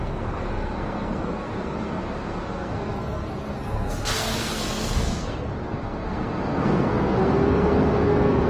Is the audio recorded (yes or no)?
no